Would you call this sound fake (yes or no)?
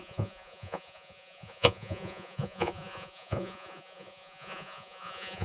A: yes